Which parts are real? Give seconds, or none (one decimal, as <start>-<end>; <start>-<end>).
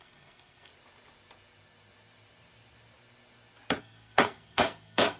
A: 0.7-3.8